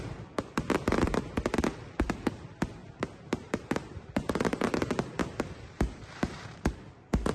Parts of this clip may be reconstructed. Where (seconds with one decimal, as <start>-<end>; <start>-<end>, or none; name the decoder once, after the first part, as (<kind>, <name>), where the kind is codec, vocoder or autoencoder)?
2.8-6.7 (vocoder, BigVGAN v2)